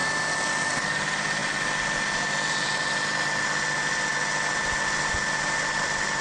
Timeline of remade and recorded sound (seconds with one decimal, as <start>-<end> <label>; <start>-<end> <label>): 0.0-6.2 recorded